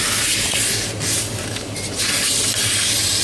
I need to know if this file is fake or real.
real